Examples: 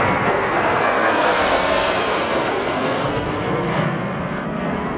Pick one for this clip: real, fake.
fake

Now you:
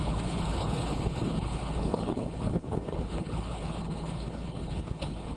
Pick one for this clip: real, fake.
fake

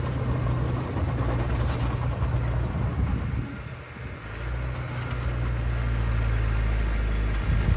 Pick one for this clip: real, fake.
real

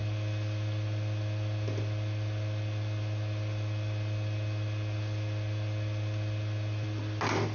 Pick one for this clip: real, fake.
real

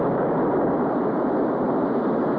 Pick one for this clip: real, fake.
real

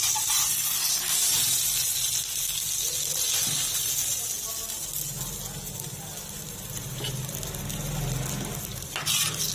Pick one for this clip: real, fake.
real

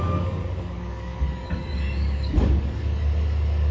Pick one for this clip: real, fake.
fake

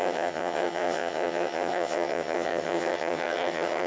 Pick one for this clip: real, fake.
fake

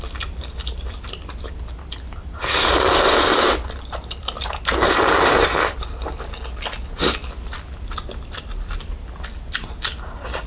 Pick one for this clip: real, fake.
real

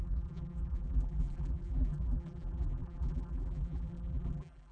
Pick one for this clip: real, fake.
fake